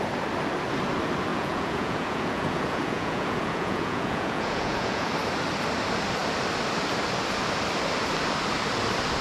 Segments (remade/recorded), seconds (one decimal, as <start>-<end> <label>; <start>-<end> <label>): 0.0-1.3 recorded; 1.3-5.1 remade; 5.1-9.2 recorded